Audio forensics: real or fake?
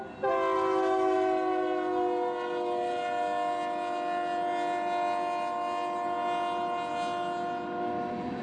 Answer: real